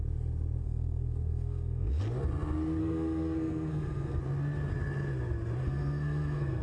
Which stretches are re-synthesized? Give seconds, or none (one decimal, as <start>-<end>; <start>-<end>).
0.6-2.0; 2.8-4.2; 5.6-6.6

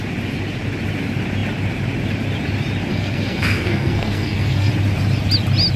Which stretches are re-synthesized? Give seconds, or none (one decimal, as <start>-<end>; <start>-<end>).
2.9-4.7